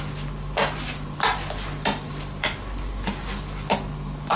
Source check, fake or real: real